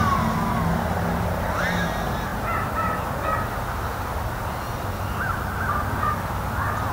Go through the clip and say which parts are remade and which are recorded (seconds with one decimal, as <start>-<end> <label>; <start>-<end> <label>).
0.0-6.9 recorded